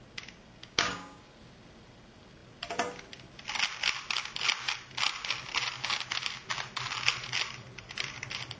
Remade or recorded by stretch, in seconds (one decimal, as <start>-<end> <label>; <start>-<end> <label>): 0.0-0.6 recorded; 0.6-1.2 remade; 1.2-8.6 recorded